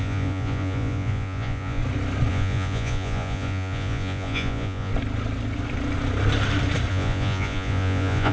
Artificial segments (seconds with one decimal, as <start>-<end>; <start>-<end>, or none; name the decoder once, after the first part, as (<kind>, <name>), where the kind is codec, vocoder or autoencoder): 0.0-1.8 (vocoder, Vocos); 2.3-4.9; 6.9-8.3

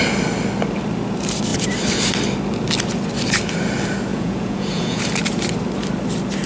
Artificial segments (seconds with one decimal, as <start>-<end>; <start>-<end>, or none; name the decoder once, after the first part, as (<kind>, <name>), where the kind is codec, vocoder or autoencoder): 4.1-5.0 (vocoder, Vocos)

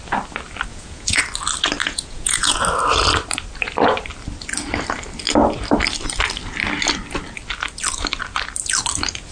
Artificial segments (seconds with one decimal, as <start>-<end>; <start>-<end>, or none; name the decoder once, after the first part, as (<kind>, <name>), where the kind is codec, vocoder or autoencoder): 0.7-1.2 (vocoder, Vocos); 1.8-2.6

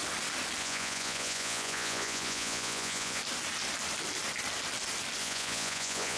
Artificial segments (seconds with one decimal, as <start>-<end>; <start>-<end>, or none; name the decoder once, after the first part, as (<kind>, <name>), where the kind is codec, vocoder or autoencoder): 0.6-3.2 (vocoder, Vocos); 5.2-6.2

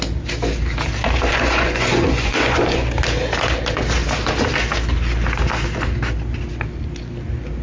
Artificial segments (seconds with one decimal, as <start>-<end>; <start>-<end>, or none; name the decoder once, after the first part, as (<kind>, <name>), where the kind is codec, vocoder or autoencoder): 1.3-2.9 (vocoder, Vocos)

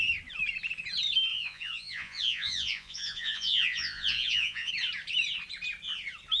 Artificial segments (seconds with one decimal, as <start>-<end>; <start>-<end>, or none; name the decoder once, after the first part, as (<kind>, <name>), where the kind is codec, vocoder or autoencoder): 1.3-4.7 (vocoder, Vocos)